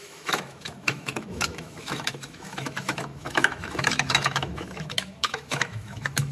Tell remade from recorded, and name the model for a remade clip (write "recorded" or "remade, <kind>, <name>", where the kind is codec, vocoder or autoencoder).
remade, autoencoder, DAC-VAE